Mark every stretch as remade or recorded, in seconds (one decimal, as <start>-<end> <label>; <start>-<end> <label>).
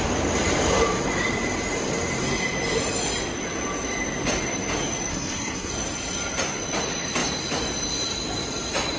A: 0.0-5.1 recorded; 5.1-5.7 remade; 5.7-9.0 recorded